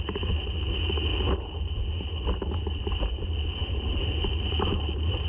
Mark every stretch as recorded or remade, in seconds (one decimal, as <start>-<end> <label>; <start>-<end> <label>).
0.0-5.3 recorded